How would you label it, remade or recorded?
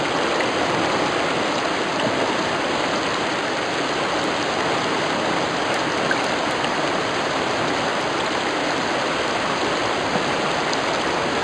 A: recorded